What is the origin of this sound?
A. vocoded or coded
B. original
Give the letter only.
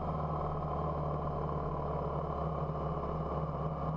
B